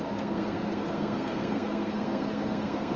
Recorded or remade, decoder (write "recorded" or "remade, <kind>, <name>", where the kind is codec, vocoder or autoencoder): remade, codec, SNAC